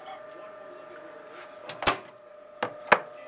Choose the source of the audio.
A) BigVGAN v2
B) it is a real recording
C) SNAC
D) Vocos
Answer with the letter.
B